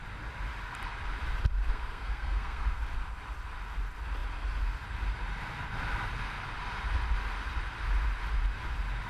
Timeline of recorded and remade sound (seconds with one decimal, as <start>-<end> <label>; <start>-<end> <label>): 0.0-1.7 recorded; 1.7-2.8 remade; 2.8-9.1 recorded